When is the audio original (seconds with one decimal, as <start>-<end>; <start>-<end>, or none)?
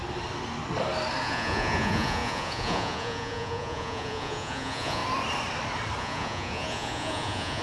0.0-1.2; 5.0-6.0